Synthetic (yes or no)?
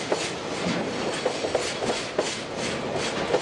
no